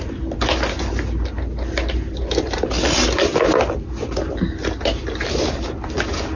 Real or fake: real